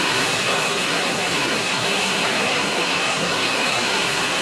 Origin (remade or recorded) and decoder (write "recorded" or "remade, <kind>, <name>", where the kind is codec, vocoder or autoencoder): remade, codec, SNAC